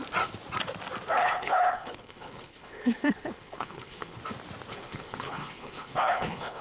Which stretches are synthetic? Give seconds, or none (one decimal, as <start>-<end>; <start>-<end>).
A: 1.2-4.2; 4.7-6.6